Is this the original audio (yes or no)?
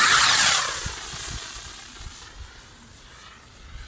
yes